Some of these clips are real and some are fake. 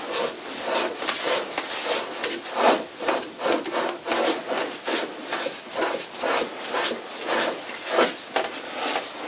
real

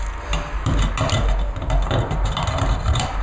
real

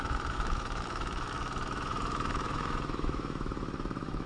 fake